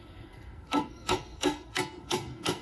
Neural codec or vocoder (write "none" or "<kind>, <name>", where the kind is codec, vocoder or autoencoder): codec, SNAC